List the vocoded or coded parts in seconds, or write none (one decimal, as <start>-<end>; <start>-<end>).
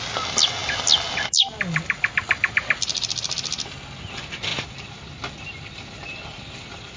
none